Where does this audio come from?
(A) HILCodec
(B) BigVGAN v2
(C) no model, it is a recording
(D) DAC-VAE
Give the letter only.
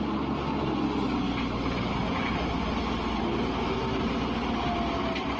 C